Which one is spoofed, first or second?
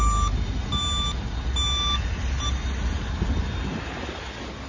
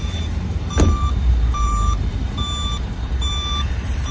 second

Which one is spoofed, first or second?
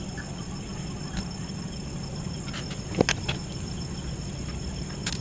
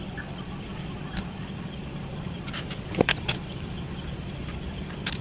second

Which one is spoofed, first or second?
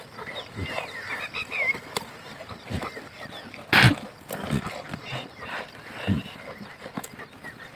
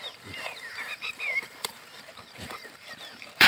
second